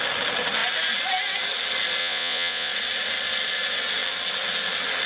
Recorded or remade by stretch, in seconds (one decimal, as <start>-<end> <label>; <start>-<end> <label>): 0.0-2.0 recorded; 2.0-2.7 remade; 2.7-5.1 recorded